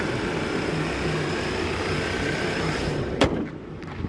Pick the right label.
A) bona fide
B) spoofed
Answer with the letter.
A